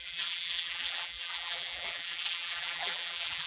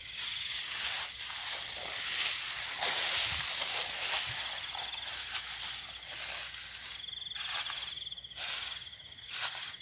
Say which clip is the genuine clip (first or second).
second